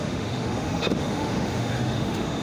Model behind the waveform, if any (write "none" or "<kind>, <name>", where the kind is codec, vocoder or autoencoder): autoencoder, DAC-VAE